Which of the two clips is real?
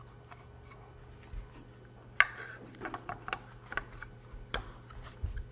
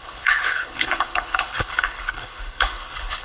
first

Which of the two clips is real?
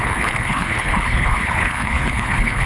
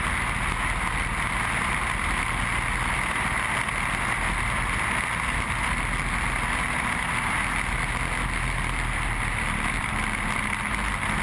second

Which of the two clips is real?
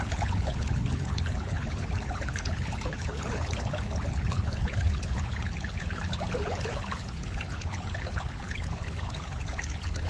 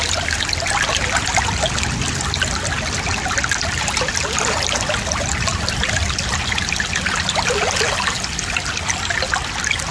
second